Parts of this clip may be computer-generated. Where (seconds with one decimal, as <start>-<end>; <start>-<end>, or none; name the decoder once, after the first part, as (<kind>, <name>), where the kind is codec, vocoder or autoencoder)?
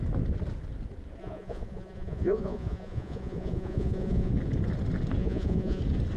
1.2-4.3 (vocoder, Vocos); 5.2-5.8